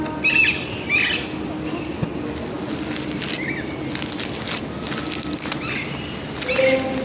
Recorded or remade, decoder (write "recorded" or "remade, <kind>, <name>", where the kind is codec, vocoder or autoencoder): recorded